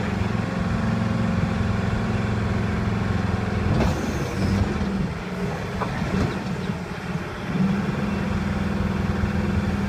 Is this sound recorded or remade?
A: recorded